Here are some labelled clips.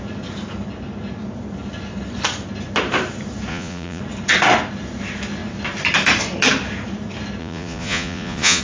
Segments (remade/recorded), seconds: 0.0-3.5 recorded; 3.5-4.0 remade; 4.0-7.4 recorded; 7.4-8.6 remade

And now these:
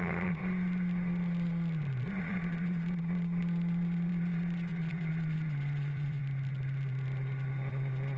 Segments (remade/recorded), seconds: 0.0-0.4 remade; 0.4-2.2 recorded; 2.2-6.2 remade; 6.2-7.7 recorded; 7.7-8.2 remade

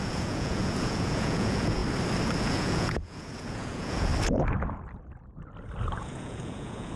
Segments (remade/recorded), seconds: 0.0-1.8 remade; 1.8-2.4 recorded; 2.4-4.1 remade; 4.1-6.0 recorded; 6.0-7.0 remade

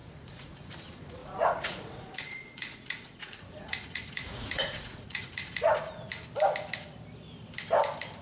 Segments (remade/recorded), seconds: 0.0-0.7 remade; 0.7-1.2 recorded; 1.2-6.1 remade; 6.1-8.2 recorded

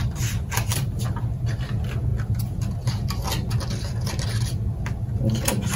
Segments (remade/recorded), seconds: 0.0-5.8 recorded

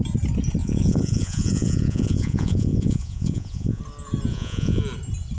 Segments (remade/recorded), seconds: 0.0-0.6 recorded; 0.6-3.8 remade; 3.8-4.3 recorded; 4.3-4.8 remade; 4.8-5.4 recorded